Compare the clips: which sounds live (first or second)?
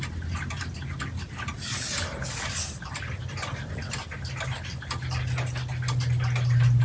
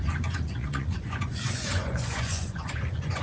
first